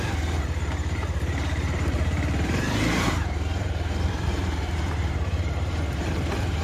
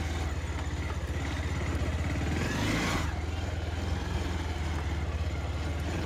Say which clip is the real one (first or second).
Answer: second